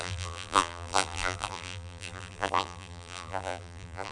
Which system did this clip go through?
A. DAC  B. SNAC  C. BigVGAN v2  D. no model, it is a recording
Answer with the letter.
C